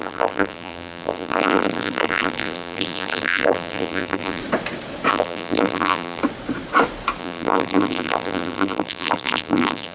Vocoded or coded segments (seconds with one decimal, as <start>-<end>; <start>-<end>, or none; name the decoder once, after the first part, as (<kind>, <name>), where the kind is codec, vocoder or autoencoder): 0.0-4.4 (vocoder, BigVGAN v2); 5.1-6.2; 7.2-9.9